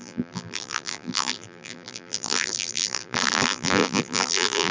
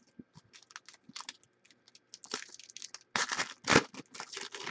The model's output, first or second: first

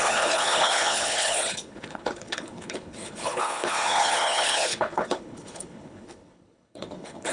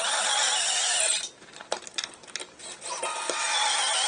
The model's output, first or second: first